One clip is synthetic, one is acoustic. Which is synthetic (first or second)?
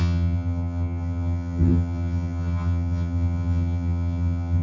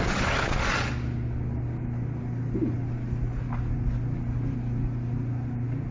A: first